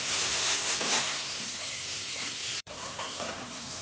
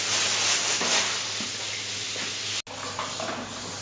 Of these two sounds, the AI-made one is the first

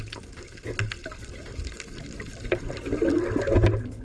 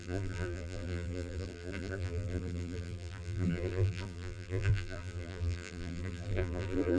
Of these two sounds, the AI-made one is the second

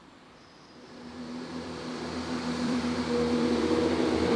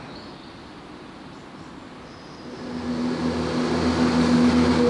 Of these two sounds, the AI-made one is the first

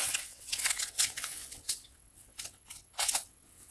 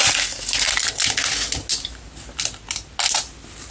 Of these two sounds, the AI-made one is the first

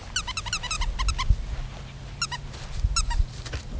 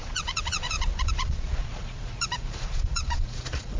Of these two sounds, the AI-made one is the second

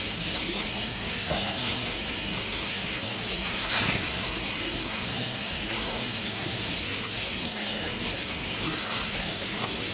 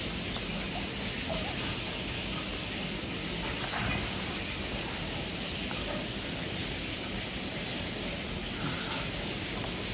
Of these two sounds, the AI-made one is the first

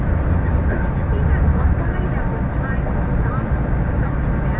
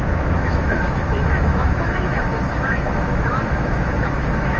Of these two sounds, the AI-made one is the second